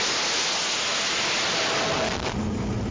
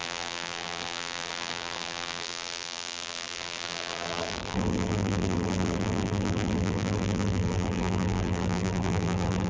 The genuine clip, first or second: first